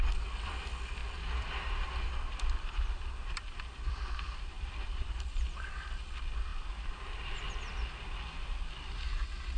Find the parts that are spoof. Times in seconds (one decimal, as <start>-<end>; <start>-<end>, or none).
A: 1.0-5.3; 6.5-7.5